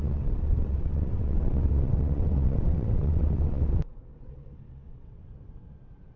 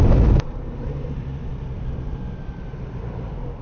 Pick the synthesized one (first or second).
first